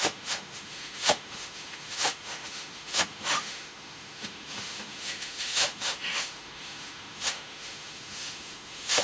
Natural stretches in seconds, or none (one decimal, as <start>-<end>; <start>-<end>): none